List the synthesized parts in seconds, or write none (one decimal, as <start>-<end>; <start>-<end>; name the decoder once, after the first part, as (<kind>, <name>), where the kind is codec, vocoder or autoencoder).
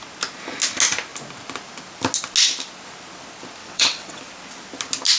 3.6-4.2 (vocoder, WaveNeXt)